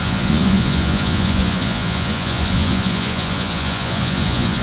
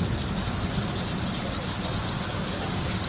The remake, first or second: first